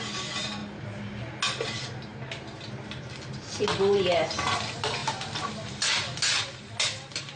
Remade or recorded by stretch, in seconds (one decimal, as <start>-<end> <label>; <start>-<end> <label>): 0.0-7.4 recorded